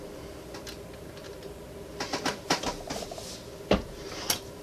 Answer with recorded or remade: recorded